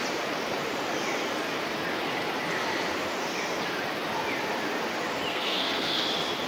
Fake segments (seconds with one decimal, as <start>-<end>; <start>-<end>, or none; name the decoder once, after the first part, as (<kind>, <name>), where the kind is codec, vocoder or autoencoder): 5.3-6.0 (codec, SNAC)